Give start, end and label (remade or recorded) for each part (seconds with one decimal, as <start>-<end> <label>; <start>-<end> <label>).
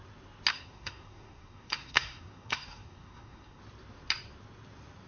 0.0-0.5 recorded; 0.5-3.6 remade; 3.6-5.1 recorded